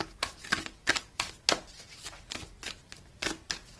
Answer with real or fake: real